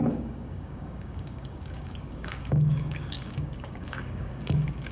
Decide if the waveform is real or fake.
fake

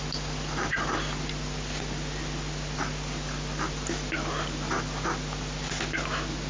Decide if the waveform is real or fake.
real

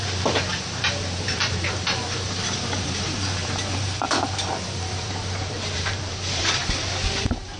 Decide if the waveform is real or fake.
fake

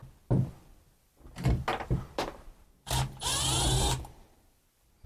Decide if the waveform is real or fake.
real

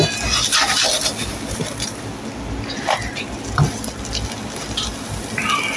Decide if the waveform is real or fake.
real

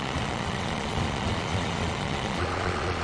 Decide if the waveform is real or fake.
fake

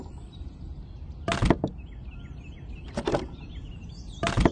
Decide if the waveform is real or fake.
real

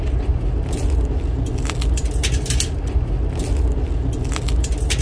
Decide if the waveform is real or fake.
real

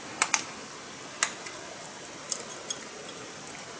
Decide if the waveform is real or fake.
real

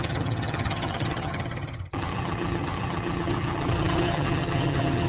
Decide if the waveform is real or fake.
fake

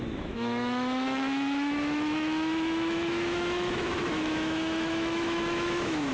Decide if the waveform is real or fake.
fake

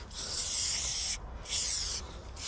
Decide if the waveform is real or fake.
real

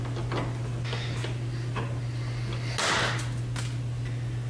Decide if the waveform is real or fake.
real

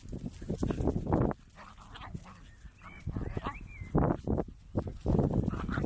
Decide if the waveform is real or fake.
real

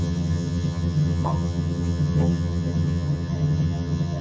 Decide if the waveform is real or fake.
fake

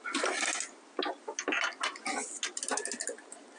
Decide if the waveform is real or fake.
real